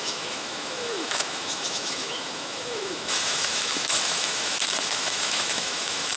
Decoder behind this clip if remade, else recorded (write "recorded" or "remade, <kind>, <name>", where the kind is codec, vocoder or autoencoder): remade, autoencoder, DAC-VAE